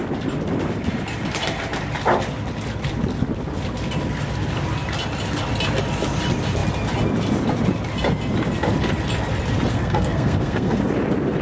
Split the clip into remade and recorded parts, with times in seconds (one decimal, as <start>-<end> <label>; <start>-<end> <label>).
0.0-9.7 recorded; 9.7-10.8 remade; 10.8-11.4 recorded